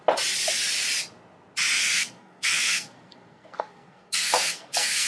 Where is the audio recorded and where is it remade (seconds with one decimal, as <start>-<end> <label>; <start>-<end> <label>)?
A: 0.0-1.8 recorded; 1.8-5.1 remade